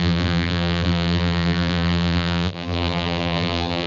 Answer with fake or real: fake